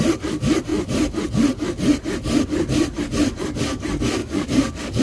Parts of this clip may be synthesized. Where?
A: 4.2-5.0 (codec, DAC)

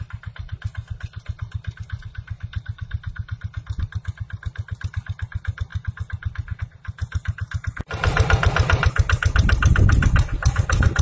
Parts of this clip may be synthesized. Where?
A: none

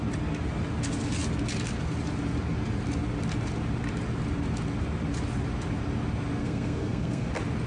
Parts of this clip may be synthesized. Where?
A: 6.4-7.3 (codec, SNAC)

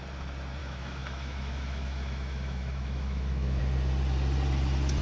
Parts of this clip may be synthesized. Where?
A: 0.6-3.6 (autoencoder, DAC-VAE)